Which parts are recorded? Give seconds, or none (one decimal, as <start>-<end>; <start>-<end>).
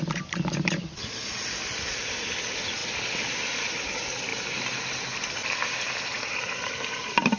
0.0-7.4